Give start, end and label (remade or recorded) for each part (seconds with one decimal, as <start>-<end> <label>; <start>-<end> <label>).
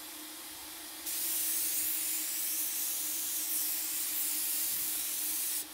0.0-4.7 recorded; 4.7-5.2 remade; 5.2-5.7 recorded